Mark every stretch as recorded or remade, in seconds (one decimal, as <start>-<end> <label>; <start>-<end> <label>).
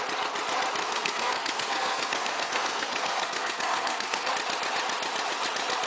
0.0-0.8 recorded; 0.8-4.3 remade; 4.3-5.9 recorded